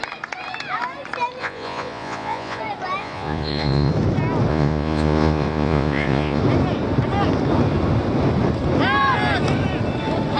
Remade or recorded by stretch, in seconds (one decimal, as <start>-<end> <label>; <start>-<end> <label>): 0.0-1.4 recorded; 1.4-2.6 remade; 2.6-3.0 recorded; 3.0-3.9 remade; 3.9-4.5 recorded; 4.5-6.4 remade; 6.4-10.4 recorded

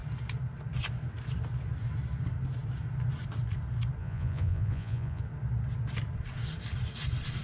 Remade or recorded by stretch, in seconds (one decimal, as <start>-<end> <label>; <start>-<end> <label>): 0.0-4.0 recorded; 4.0-5.2 remade; 5.2-7.4 recorded

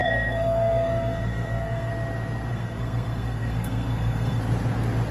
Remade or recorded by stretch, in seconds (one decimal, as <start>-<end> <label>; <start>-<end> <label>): 0.0-1.9 remade; 1.9-2.5 recorded; 2.5-4.4 remade; 4.4-5.1 recorded

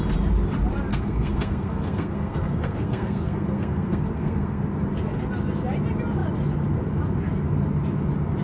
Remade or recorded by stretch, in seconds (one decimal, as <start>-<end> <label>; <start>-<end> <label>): 0.0-0.9 recorded; 0.9-4.6 remade; 4.6-8.4 recorded

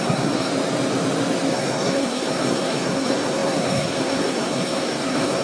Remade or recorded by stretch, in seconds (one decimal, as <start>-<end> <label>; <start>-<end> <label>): 0.0-0.5 remade; 0.5-1.5 recorded; 1.5-5.4 remade